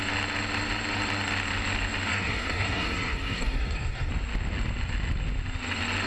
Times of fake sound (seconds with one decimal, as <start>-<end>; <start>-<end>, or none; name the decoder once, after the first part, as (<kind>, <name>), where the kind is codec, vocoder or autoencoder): 2.1-4.1 (codec, SNAC)